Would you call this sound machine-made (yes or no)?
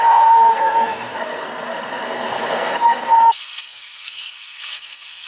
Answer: yes